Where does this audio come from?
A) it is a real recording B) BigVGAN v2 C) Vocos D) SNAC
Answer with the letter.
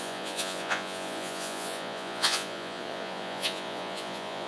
C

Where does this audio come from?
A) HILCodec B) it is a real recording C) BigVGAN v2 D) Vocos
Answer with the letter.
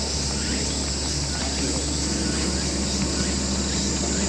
B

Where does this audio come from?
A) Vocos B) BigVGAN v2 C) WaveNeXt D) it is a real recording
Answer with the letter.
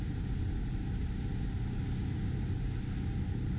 D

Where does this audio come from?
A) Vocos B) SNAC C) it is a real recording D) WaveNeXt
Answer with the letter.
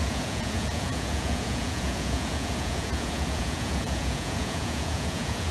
A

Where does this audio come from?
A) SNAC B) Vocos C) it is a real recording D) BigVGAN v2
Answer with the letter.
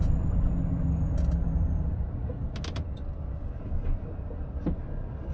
C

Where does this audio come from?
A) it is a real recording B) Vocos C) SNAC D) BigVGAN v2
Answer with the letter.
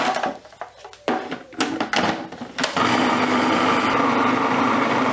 A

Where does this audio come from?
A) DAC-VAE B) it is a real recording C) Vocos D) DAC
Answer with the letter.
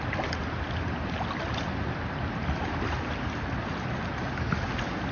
B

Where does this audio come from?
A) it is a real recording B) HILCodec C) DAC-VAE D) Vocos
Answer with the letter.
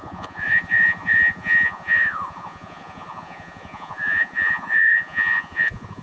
D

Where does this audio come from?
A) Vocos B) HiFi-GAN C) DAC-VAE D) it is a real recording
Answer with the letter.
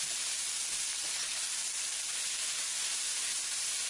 D